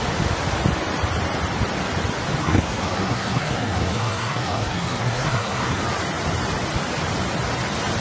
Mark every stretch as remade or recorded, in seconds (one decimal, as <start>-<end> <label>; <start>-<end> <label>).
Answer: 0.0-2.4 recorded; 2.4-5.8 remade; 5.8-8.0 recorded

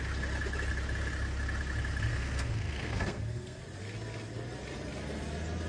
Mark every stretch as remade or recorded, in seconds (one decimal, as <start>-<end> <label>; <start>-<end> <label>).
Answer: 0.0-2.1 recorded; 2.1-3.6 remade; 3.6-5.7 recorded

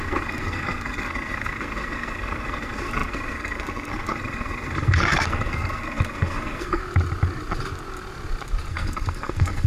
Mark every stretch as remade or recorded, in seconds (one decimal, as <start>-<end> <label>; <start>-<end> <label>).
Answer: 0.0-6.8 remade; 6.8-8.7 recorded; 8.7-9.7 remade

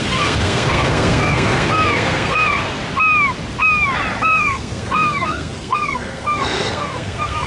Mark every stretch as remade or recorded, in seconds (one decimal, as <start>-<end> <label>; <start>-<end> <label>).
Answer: 0.0-2.8 remade; 2.8-4.2 recorded; 4.2-7.5 remade

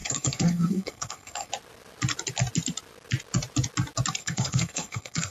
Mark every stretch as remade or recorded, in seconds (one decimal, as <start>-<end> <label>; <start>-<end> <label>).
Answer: 0.0-1.5 remade; 1.5-4.2 recorded; 4.2-5.3 remade

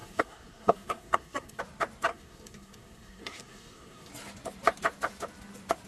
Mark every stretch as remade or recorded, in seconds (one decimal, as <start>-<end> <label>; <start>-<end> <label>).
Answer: 0.0-1.6 remade; 1.6-2.1 recorded; 2.1-4.1 remade; 4.1-5.9 recorded

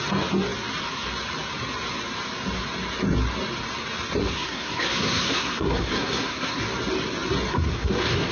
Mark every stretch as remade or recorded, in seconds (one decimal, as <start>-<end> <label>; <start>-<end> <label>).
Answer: 0.0-4.2 recorded; 4.2-6.6 remade; 6.6-7.5 recorded; 7.5-8.3 remade